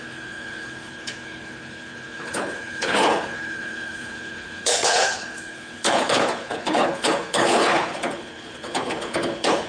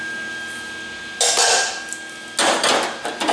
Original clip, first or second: second